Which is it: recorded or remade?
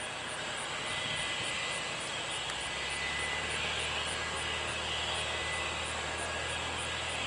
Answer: recorded